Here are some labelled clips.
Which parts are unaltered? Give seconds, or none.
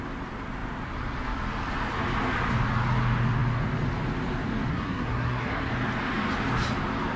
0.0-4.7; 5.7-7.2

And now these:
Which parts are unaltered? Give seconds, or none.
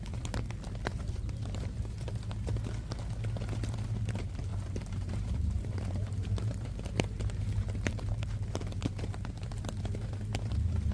0.0-0.9; 2.5-4.5; 9.5-10.9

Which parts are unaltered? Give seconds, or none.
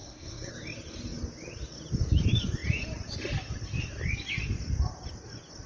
0.5-5.7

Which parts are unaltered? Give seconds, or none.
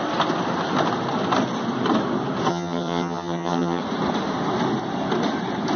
0.0-2.5; 3.8-5.8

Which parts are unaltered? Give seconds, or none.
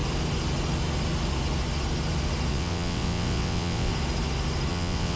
0.0-2.5; 3.9-4.7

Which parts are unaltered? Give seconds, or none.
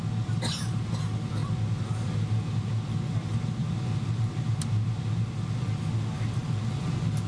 0.0-7.3